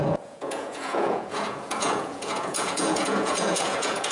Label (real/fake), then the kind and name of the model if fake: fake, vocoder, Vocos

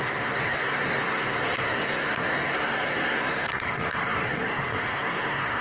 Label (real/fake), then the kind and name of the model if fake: fake, codec, SNAC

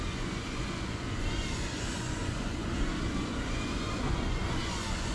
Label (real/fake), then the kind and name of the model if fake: fake, vocoder, Vocos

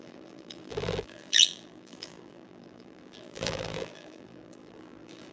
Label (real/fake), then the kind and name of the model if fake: fake, vocoder, BigVGAN v2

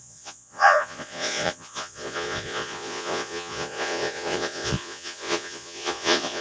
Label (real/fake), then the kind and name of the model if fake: fake, vocoder, Vocos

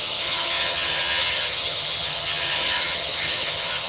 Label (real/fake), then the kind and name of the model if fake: fake, vocoder, HiFi-GAN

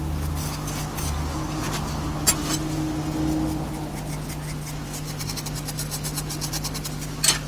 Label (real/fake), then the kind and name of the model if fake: real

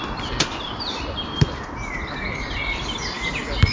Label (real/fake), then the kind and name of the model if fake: real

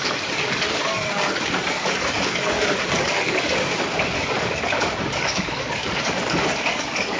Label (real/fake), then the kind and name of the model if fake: fake, codec, DAC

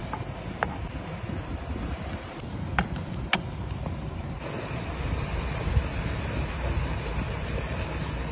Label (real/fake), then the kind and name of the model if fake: real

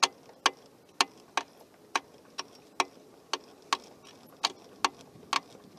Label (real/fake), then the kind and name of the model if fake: real